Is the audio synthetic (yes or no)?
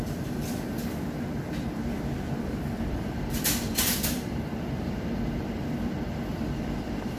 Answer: yes